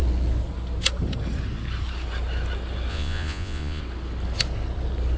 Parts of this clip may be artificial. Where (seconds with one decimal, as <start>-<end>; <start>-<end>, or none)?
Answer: 2.9-3.8